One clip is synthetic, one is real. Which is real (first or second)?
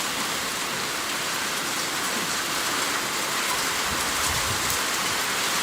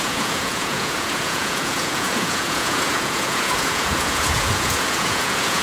first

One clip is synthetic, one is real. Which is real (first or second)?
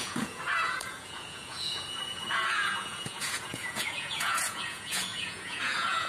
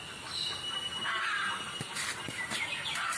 second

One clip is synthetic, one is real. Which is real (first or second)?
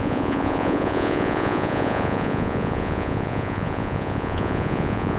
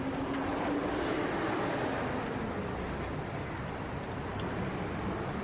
second